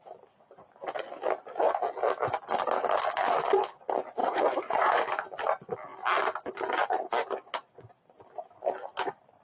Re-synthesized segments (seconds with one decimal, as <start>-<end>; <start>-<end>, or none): 4.2-5.0